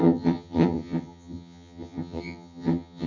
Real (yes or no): no